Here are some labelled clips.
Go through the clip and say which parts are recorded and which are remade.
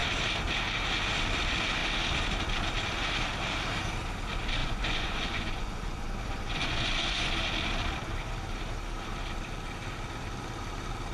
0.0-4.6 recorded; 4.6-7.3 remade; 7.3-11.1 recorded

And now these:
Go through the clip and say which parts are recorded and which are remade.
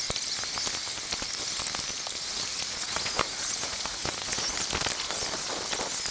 0.0-2.5 recorded; 2.5-4.6 remade; 4.6-6.1 recorded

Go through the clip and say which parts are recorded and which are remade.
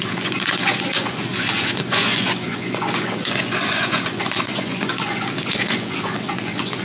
0.0-6.8 remade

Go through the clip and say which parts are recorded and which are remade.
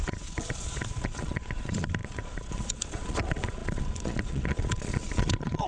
0.0-5.7 remade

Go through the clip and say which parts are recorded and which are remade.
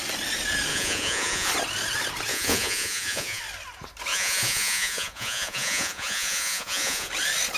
0.0-0.7 recorded; 0.7-1.5 remade; 1.5-2.3 recorded; 2.3-3.4 remade; 3.4-4.1 recorded; 4.1-7.1 remade; 7.1-7.6 recorded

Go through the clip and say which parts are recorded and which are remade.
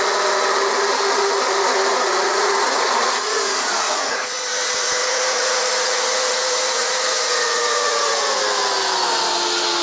0.0-1.9 recorded; 1.9-4.2 remade; 4.2-5.0 recorded; 5.0-8.4 remade; 8.4-9.8 recorded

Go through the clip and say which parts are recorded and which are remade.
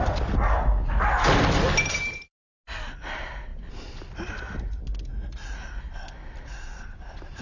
0.0-7.4 recorded